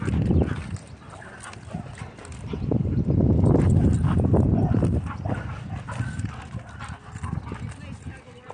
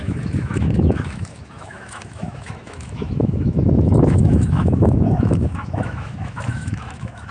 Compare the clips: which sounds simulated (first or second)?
second